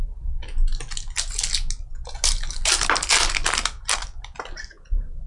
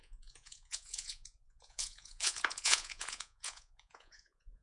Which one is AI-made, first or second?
second